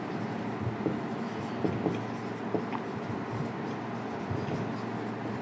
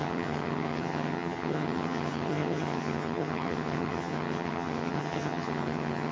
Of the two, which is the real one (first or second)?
first